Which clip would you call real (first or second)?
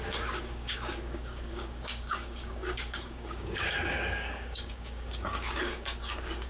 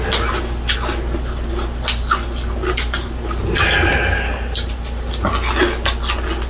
second